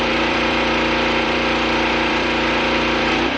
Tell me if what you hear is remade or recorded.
remade